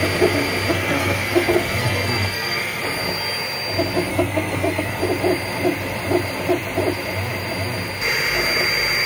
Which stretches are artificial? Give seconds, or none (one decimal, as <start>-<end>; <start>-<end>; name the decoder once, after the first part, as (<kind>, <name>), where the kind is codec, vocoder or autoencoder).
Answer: 0.7-2.8 (codec, SNAC); 4.1-5.0